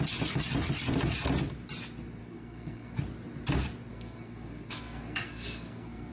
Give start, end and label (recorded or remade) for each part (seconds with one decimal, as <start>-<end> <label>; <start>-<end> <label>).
0.0-2.2 recorded; 2.2-2.9 remade; 2.9-3.9 recorded; 3.9-6.1 remade